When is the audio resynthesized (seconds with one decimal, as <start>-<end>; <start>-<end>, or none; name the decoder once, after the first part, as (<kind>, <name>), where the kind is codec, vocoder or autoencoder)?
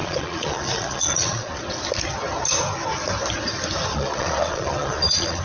0.0-1.6 (vocoder, Vocos); 3.9-5.4